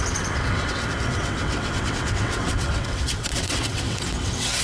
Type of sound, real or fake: fake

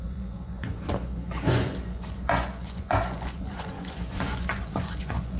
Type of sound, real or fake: fake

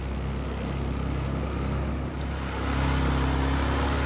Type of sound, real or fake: real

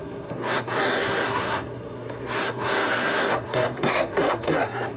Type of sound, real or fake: fake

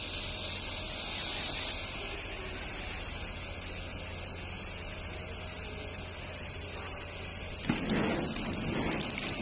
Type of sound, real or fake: real